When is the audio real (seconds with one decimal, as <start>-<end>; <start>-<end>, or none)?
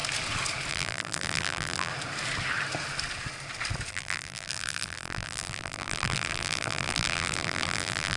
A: 0.0-0.7; 1.9-3.9